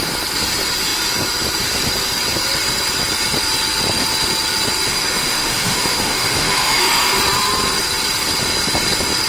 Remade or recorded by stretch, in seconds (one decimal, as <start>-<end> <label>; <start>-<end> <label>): 0.0-4.9 recorded; 4.9-7.2 remade; 7.2-9.3 recorded